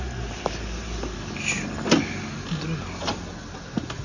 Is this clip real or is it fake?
real